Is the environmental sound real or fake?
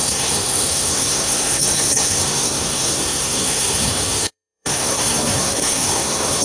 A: fake